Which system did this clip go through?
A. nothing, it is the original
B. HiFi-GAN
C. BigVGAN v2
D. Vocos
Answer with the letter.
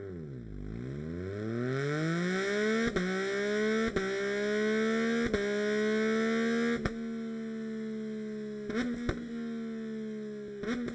A